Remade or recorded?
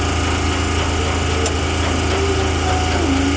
recorded